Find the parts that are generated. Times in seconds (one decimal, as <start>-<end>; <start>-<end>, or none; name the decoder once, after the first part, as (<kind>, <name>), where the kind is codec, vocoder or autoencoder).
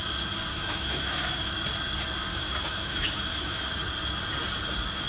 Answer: 0.5-1.5 (autoencoder, DAC-VAE); 2.3-3.7